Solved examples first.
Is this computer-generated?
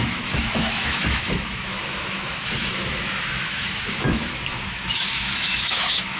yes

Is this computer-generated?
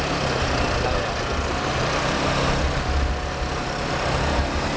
no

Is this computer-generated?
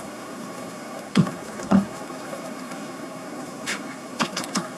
yes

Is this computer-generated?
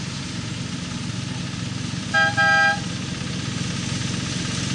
no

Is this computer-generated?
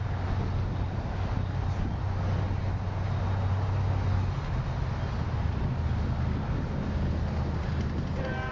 no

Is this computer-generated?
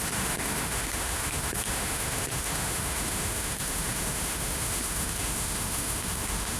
yes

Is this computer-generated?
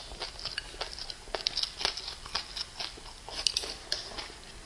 no